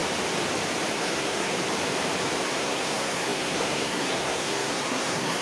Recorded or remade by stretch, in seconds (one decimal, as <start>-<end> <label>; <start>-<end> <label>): 0.0-0.9 recorded; 0.9-1.5 remade; 1.5-2.5 recorded; 2.5-5.4 remade